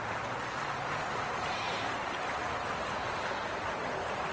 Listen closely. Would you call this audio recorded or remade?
recorded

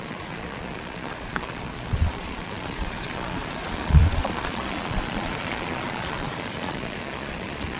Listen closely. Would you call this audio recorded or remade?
remade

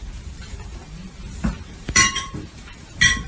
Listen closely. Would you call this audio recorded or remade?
remade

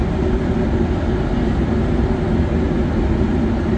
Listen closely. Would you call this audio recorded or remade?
recorded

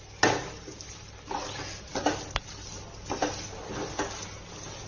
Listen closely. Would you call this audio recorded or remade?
recorded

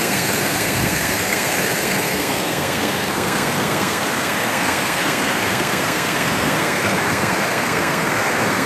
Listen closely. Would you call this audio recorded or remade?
remade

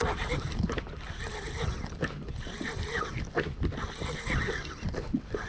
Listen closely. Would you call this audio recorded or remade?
recorded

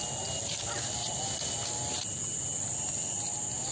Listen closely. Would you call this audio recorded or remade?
recorded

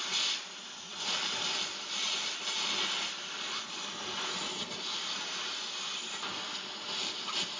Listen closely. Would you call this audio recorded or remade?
recorded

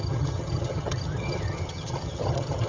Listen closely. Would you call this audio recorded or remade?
remade